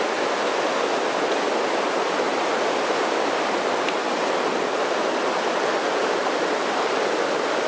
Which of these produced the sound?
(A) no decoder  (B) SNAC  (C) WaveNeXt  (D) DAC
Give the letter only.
A